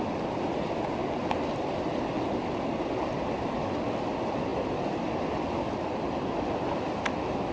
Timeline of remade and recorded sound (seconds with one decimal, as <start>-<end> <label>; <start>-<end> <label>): 0.0-7.5 recorded

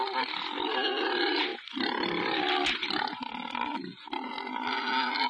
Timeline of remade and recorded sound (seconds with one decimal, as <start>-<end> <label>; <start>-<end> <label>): 0.0-5.3 recorded